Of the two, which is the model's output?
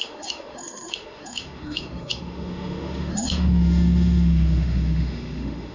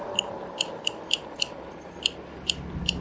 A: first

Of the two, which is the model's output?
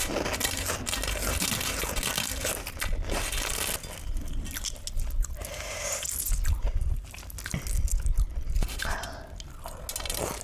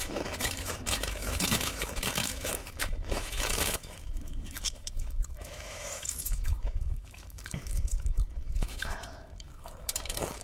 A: second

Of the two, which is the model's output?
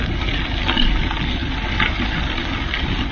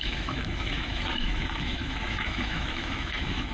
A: second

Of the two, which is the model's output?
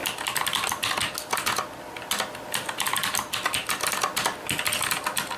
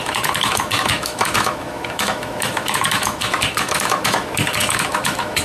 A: second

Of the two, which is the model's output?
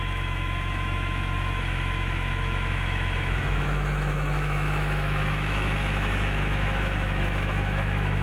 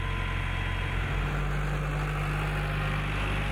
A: first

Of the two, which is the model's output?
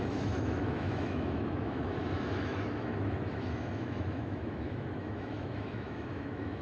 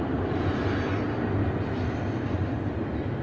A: first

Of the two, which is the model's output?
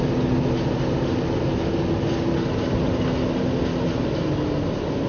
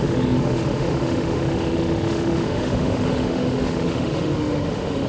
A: second